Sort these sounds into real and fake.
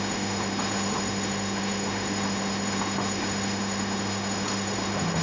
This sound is fake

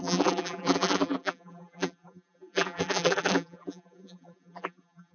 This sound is fake